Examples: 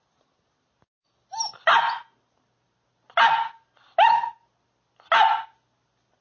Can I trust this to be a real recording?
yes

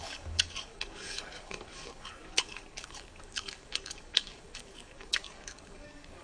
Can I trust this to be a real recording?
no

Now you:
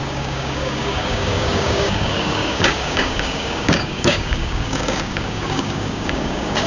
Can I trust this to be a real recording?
no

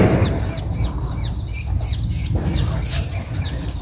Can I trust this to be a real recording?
yes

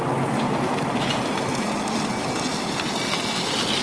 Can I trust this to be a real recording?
yes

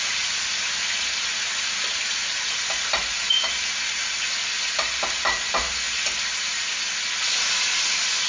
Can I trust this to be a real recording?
yes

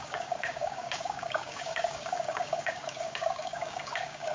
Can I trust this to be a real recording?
no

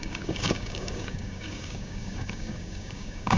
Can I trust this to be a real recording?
no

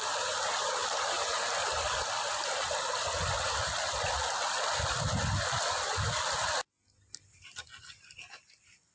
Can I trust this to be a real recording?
yes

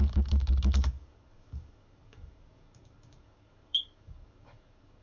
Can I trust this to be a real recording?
no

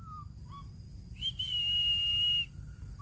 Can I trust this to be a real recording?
yes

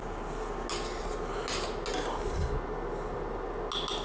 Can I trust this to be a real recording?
yes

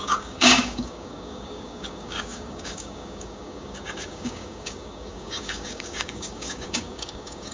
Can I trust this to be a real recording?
no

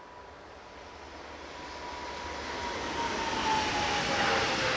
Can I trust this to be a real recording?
yes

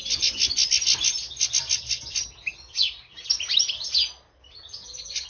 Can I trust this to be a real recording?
yes